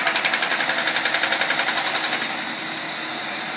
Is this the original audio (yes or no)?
yes